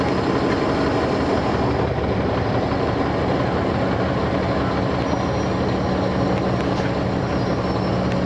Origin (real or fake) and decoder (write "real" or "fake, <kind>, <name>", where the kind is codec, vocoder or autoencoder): real